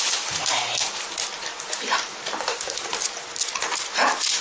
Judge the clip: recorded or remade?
remade